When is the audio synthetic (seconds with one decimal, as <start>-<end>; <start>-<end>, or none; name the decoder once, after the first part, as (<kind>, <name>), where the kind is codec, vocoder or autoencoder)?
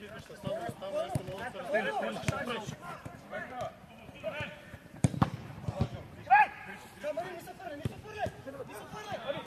0.0-9.5 (vocoder, BigVGAN v2)